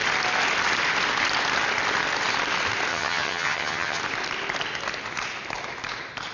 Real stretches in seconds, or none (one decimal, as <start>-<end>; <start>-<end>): 0.0-2.9; 4.0-6.3